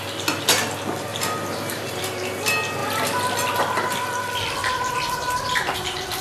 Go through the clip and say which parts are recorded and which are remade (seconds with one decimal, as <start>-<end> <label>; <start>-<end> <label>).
0.0-1.1 recorded; 1.1-2.0 remade; 2.0-4.6 recorded; 4.6-6.2 remade

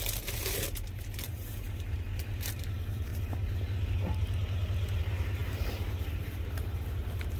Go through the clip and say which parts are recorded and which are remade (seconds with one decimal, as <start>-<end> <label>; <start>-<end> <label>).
0.0-3.1 remade; 3.1-5.0 recorded; 5.0-7.4 remade

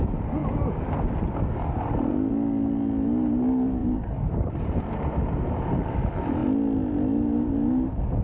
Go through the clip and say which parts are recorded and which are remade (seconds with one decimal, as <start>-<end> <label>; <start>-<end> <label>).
0.0-3.8 recorded; 3.8-4.8 remade; 4.8-8.2 recorded

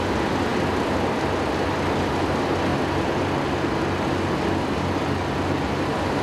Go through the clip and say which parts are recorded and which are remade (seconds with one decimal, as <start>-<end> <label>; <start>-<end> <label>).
0.0-6.2 recorded

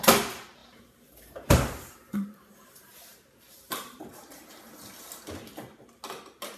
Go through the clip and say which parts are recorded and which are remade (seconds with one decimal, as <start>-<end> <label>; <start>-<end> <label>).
0.0-0.6 recorded; 0.6-4.6 remade; 4.6-6.6 recorded

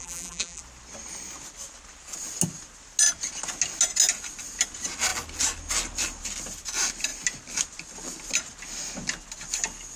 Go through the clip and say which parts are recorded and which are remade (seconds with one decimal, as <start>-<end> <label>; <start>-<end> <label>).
0.0-0.6 remade; 0.6-10.0 recorded